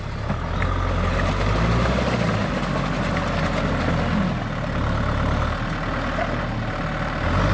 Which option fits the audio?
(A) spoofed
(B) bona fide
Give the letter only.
B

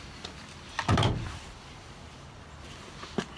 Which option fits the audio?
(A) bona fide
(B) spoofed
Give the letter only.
A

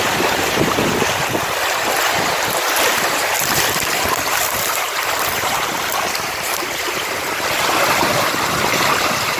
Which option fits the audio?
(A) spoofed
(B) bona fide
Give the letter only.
A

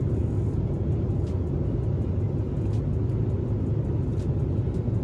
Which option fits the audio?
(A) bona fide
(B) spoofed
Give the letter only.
A